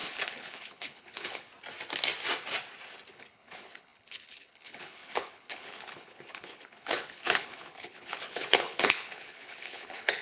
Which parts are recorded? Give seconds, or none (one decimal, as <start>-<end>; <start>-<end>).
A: 1.5-3.1